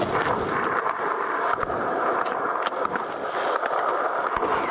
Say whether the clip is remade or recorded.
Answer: recorded